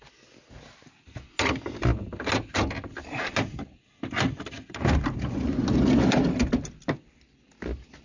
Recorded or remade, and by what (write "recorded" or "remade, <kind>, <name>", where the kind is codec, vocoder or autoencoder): recorded